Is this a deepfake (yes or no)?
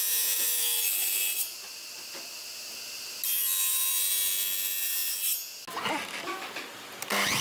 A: no